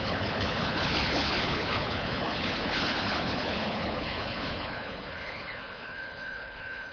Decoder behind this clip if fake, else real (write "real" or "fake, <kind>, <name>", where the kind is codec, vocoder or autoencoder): fake, codec, HILCodec